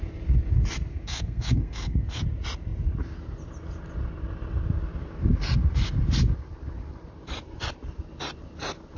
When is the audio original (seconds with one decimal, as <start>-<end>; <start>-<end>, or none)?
0.0-0.9; 2.2-9.0